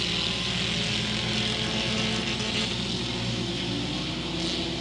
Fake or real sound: real